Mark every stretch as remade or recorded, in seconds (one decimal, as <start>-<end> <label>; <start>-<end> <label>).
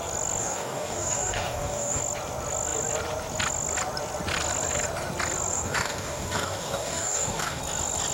0.0-0.4 recorded; 0.4-2.0 remade; 2.0-5.5 recorded; 5.5-7.6 remade; 7.6-8.1 recorded